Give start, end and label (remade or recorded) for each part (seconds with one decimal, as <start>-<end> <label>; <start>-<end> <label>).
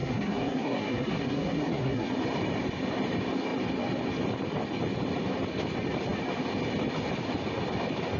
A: 0.0-2.1 remade; 2.1-8.2 recorded